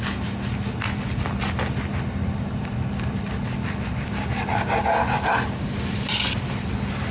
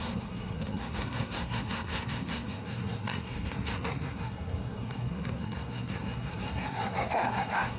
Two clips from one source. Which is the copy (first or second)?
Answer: second